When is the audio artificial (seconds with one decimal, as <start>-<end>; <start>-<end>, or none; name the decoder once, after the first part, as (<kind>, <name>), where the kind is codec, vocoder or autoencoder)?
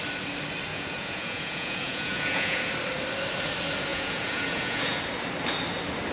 0.7-2.7 (vocoder, Vocos); 3.9-5.0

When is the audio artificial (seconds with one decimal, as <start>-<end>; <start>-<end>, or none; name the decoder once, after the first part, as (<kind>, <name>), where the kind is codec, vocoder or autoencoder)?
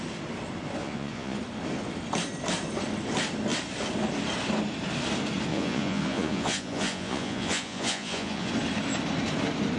0.8-1.4 (vocoder, Vocos); 5.5-8.5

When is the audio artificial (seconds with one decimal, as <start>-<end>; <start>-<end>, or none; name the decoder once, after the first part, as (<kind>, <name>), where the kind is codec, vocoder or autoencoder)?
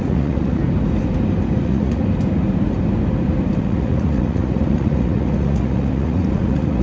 0.0-0.6 (vocoder, Vocos); 1.6-2.0; 3.6-6.8